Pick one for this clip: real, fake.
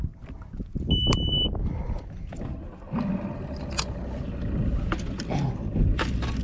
real